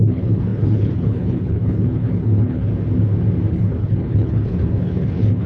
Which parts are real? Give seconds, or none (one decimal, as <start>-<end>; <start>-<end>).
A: 2.7-3.5

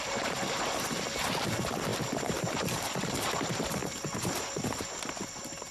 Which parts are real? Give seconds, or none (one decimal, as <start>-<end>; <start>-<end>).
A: 0.0-1.9; 3.3-5.7

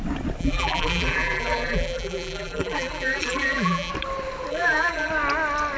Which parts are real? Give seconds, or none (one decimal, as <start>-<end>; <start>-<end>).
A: 0.0-0.4; 3.9-4.5; 5.1-5.8

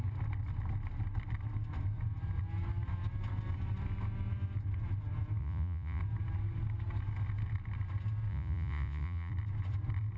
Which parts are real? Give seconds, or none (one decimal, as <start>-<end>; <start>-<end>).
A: 0.0-5.4; 6.0-8.3; 9.3-10.2

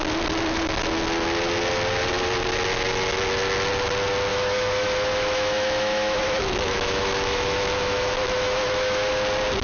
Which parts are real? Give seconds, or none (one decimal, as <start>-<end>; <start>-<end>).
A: 0.0-4.3; 9.1-9.6

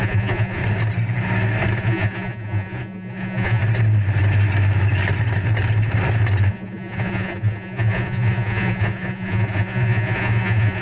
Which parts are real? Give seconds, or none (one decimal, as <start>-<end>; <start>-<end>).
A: 0.6-1.8; 3.6-6.5